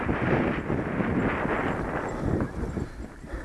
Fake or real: real